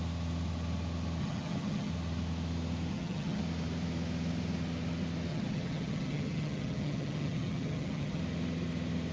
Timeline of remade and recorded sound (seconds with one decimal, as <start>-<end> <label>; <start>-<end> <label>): 0.0-1.2 recorded; 1.2-1.9 remade; 1.9-2.9 recorded; 2.9-3.4 remade; 3.4-5.3 recorded; 5.3-8.2 remade; 8.2-9.1 recorded